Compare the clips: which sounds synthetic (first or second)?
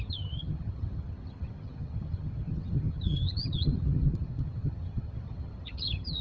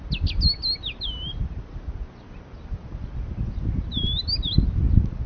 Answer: first